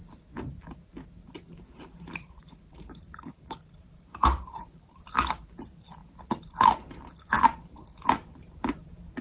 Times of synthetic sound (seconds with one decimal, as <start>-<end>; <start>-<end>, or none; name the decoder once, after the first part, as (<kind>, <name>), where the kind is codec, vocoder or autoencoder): 1.2-5.1 (vocoder, BigVGAN v2)